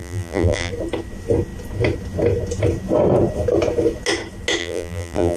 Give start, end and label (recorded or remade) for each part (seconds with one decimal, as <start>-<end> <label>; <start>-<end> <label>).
0.0-0.7 remade; 0.7-4.6 recorded; 4.6-5.4 remade